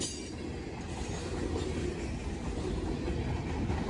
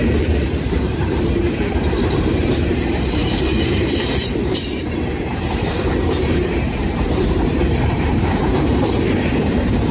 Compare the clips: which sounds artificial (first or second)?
second